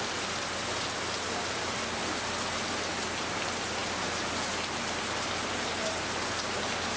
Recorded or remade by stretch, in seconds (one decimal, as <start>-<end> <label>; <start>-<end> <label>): 0.0-7.0 recorded